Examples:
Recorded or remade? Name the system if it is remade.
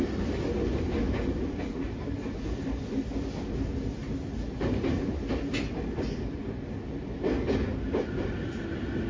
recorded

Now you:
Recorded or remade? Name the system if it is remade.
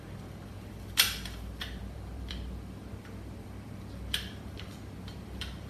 remade, vocoder, BigVGAN v2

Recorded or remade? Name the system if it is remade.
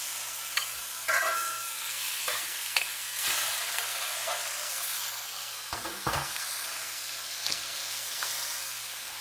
remade, codec, SNAC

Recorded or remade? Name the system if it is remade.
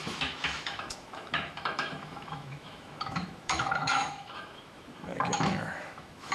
remade, autoencoder, DAC-VAE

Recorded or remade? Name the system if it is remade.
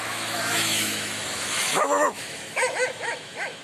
remade, autoencoder, DAC-VAE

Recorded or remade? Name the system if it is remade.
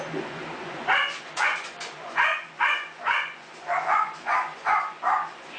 remade, vocoder, Vocos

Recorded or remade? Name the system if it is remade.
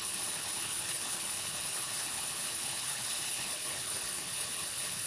remade, codec, HILCodec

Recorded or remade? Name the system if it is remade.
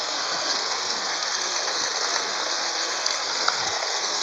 remade, codec, SNAC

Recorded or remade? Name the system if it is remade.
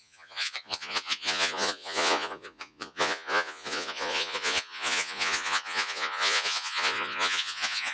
remade, vocoder, Vocos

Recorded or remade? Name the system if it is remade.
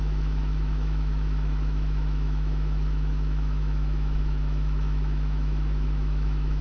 remade, autoencoder, DAC-VAE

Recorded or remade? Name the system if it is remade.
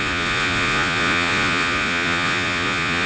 remade, vocoder, Vocos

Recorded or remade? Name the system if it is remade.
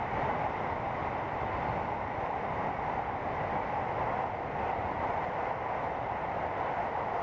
recorded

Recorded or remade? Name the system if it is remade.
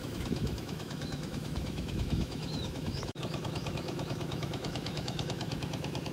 remade, autoencoder, DAC-VAE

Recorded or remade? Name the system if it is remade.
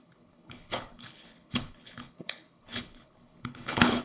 remade, codec, HILCodec